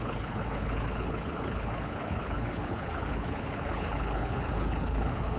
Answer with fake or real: fake